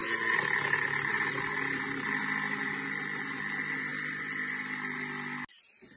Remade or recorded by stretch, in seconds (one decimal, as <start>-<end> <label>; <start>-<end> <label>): 0.0-6.0 recorded